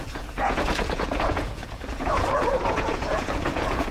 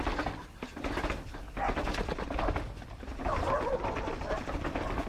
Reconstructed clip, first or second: first